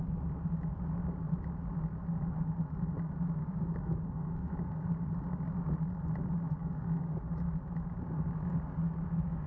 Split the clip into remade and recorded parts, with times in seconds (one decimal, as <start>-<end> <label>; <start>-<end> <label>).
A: 0.0-3.4 recorded; 3.4-5.1 remade; 5.1-6.6 recorded; 6.6-7.4 remade; 7.4-9.5 recorded